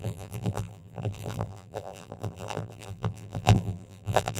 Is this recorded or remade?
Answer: remade